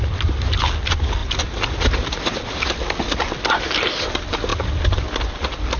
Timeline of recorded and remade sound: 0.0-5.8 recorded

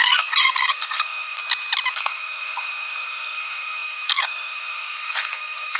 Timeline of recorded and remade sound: 0.0-1.4 remade; 1.4-1.9 recorded; 1.9-5.8 remade

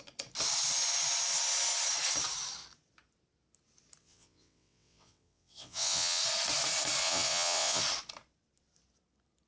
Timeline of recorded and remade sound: 0.0-4.0 recorded; 4.0-6.2 remade; 6.2-7.0 recorded; 7.0-7.8 remade; 7.8-9.5 recorded

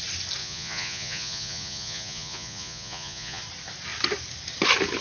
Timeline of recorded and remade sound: 0.0-0.4 recorded; 0.4-3.4 remade; 3.4-5.0 recorded

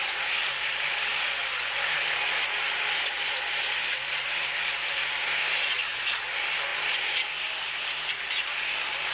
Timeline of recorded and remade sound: 0.0-9.1 recorded